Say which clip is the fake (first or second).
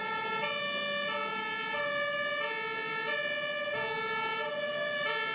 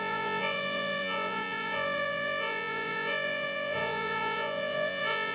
second